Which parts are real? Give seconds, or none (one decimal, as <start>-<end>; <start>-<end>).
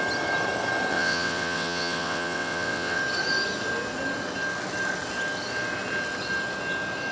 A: 0.0-0.9; 3.0-7.1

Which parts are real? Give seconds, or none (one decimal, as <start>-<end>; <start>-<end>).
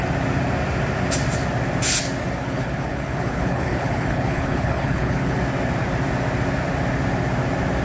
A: 0.0-2.4; 5.4-7.8